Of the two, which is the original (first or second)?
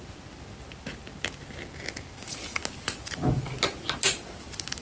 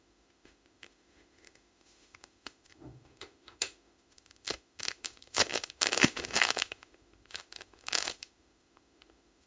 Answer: first